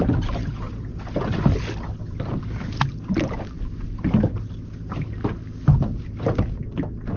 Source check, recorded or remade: recorded